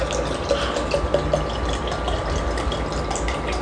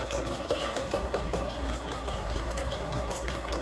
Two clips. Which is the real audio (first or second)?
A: first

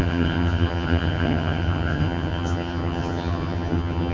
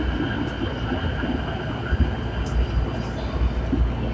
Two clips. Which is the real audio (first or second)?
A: second